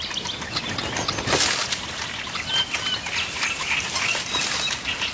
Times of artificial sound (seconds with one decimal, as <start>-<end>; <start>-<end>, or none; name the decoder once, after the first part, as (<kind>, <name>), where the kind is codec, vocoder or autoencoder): none